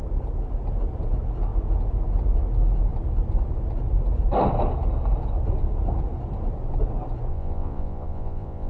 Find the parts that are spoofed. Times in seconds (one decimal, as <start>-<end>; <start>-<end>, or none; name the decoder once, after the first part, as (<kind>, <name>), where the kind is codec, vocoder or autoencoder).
7.3-8.7 (vocoder, Vocos)